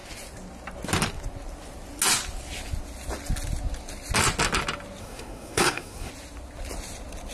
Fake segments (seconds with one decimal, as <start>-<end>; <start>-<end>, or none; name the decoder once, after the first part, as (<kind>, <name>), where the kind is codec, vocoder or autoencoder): 5.0-6.1 (codec, SNAC)